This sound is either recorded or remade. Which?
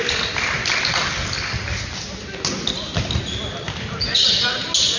recorded